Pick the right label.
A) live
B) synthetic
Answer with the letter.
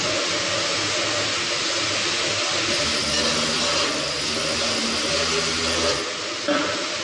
A